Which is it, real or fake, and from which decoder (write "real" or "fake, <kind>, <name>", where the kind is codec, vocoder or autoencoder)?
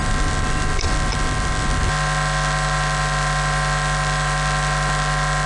real